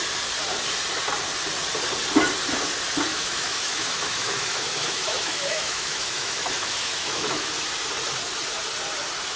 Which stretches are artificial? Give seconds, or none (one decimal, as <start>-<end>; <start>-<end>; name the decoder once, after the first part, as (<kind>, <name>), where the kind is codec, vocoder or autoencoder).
3.1-7.5 (autoencoder, DAC-VAE)